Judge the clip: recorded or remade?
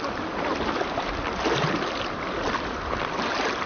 recorded